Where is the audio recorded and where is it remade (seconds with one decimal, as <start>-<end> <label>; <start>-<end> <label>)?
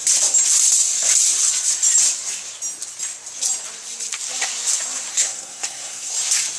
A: 0.0-5.1 recorded; 5.1-6.1 remade; 6.1-6.6 recorded